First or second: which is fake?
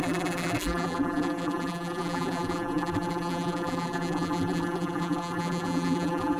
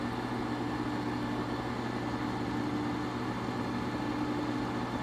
first